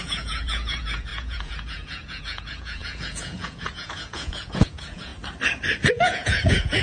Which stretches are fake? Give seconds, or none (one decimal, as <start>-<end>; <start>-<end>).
0.0-5.1; 5.9-6.8